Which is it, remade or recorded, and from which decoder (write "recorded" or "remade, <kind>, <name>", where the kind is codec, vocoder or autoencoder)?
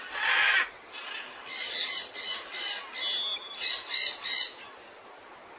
recorded